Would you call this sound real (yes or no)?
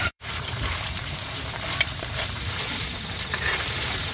no